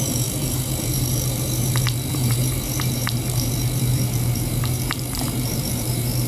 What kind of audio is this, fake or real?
fake